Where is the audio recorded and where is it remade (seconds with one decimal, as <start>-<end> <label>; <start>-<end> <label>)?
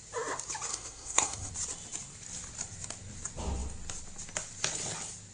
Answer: 0.0-0.7 recorded; 0.7-1.5 remade; 1.5-5.3 recorded